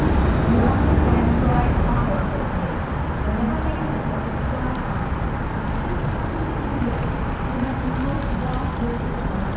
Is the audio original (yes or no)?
yes